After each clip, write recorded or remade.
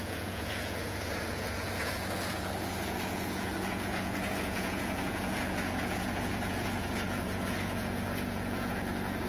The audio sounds remade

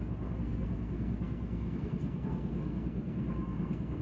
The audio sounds remade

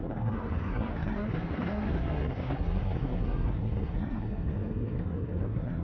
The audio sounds remade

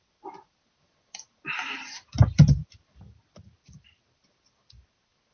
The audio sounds recorded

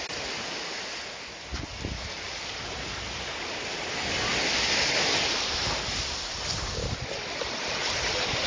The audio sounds recorded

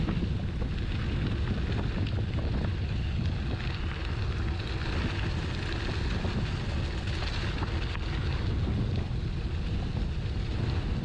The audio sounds recorded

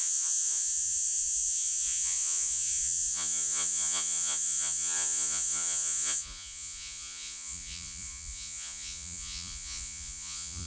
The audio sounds remade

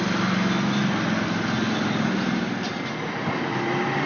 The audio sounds recorded